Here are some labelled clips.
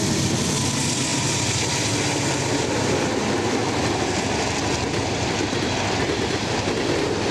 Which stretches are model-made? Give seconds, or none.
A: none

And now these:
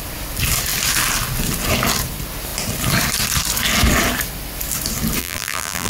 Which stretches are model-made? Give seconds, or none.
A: 5.2-5.9 (vocoder, BigVGAN v2)

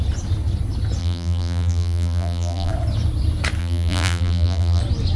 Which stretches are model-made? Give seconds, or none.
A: 1.0-2.7 (vocoder, BigVGAN v2); 3.6-4.8

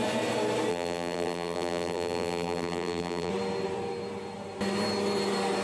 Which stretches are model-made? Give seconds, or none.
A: 0.7-3.3 (vocoder, BigVGAN v2)

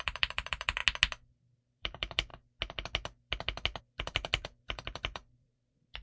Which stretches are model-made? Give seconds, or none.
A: 0.0-0.8 (vocoder, BigVGAN v2); 1.7-2.3; 3.8-6.0

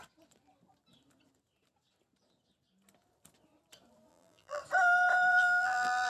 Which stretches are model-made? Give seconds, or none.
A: 4.1-4.6 (vocoder, BigVGAN v2); 5.3-6.1

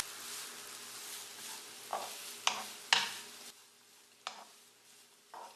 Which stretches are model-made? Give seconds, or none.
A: none

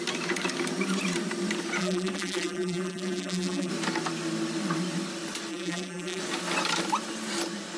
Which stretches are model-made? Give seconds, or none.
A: 1.8-3.7 (vocoder, BigVGAN v2); 5.5-6.2